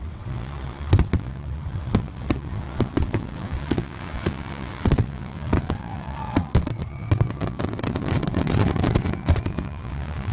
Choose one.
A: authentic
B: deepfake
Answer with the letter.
B